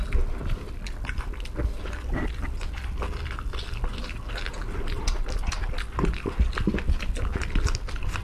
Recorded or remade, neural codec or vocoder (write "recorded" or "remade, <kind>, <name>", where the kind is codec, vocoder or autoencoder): recorded